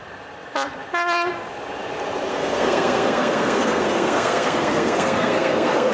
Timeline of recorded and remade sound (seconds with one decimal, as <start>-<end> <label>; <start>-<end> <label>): 0.0-2.3 recorded; 2.3-5.9 remade